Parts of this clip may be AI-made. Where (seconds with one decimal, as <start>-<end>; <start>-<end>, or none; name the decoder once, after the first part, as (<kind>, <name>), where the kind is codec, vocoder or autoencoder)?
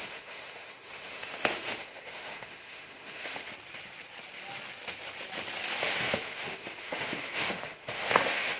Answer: 0.0-3.5 (autoencoder, DAC-VAE); 5.8-8.6